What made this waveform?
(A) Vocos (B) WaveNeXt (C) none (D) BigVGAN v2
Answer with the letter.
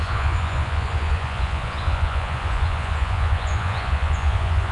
A